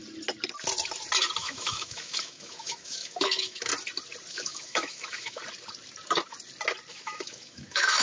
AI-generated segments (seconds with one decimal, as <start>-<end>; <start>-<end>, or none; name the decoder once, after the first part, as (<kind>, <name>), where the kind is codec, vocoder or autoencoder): 1.4-3.7 (autoencoder, DAC-VAE); 4.3-5.4; 6.9-8.0